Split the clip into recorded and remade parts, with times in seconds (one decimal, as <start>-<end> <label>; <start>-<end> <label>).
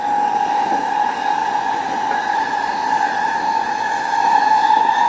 0.0-1.4 recorded; 1.4-4.5 remade; 4.5-5.1 recorded